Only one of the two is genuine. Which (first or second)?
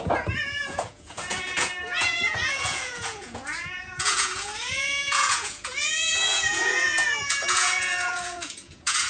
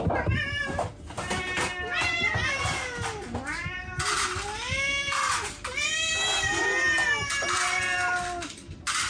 second